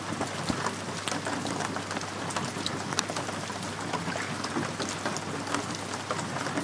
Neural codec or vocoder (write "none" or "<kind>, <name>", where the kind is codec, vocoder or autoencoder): none